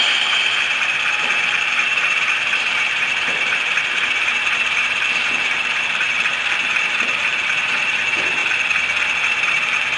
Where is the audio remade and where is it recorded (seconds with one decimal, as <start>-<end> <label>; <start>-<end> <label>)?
0.0-8.4 remade; 8.4-9.2 recorded; 9.2-10.0 remade